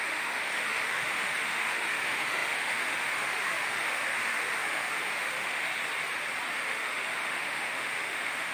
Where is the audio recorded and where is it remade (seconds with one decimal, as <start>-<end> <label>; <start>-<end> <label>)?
0.0-5.7 remade; 5.7-6.5 recorded; 6.5-8.5 remade